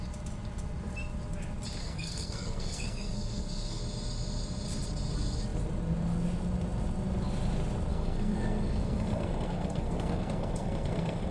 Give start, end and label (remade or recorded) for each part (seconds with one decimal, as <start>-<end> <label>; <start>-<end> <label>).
0.0-1.8 recorded; 1.8-3.8 remade; 3.8-7.9 recorded; 7.9-11.3 remade